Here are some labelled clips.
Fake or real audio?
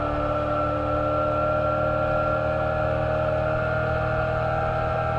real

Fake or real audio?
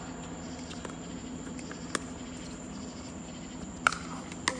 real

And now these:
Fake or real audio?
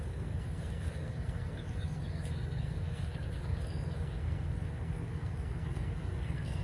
fake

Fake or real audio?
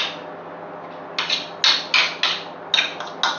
real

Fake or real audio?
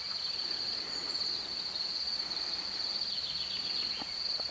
real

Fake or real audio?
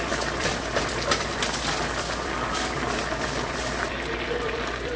fake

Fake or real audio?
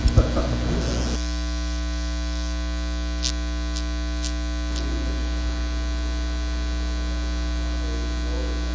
real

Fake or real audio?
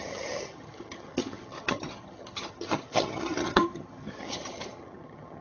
fake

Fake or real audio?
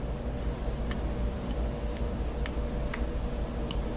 real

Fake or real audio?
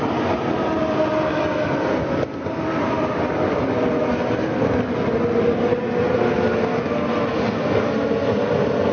real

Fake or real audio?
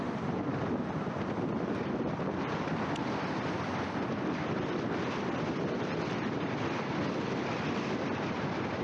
real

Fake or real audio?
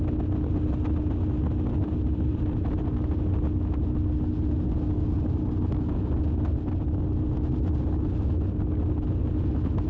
real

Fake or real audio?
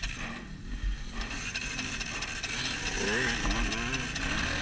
real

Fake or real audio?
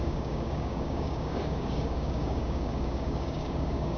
fake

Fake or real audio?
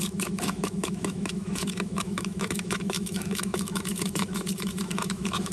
fake